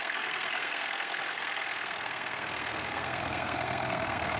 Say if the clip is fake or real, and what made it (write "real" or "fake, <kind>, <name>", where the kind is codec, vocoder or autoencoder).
fake, codec, SNAC